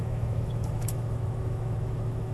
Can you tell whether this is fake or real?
fake